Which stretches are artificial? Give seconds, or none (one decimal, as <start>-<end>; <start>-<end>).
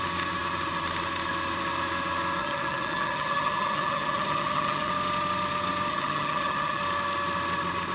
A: 2.4-4.9; 5.9-6.8